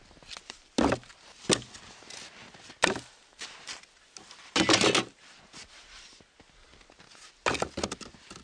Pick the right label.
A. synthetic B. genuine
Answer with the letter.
B